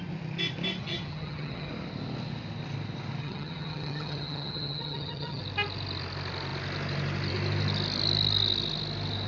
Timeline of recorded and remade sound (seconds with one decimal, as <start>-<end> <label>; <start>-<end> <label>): 0.0-0.8 recorded; 0.8-1.7 remade; 1.7-3.2 recorded; 3.2-5.4 remade; 5.4-9.3 recorded